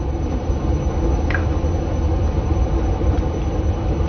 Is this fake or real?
fake